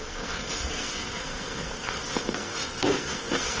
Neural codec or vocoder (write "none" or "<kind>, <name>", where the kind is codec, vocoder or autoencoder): codec, SNAC